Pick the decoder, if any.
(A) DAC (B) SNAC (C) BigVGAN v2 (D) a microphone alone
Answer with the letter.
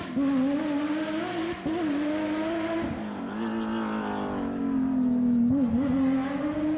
D